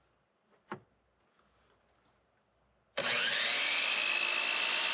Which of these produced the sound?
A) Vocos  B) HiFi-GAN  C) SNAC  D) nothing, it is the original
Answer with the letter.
D